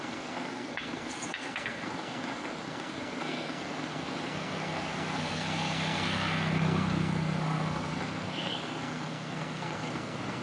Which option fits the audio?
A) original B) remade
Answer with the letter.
B